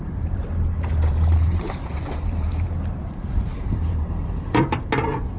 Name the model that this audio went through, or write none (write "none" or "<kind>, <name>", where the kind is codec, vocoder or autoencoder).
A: vocoder, BigVGAN v2